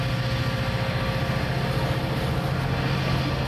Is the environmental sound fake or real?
real